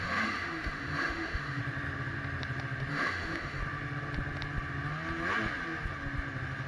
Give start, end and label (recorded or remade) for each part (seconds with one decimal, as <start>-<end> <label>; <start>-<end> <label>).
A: 0.0-1.6 remade; 1.6-2.9 recorded; 2.9-3.6 remade; 3.6-6.7 recorded